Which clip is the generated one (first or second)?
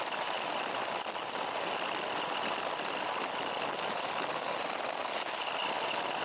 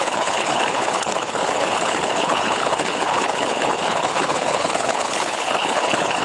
second